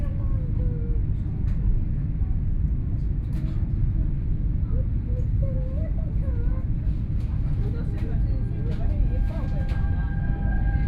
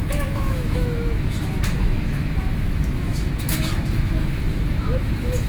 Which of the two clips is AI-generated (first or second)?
second